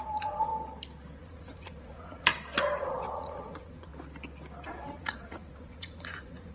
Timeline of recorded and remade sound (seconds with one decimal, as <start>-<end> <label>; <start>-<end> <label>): 0.0-0.5 remade; 0.5-1.2 recorded; 1.2-2.3 remade; 2.3-2.8 recorded; 2.8-3.9 remade; 3.9-4.7 recorded; 4.7-6.5 remade